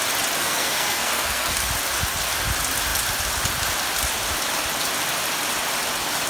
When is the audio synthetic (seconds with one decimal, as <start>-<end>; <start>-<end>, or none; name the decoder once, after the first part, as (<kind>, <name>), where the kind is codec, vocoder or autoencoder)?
0.4-1.7 (codec, SNAC)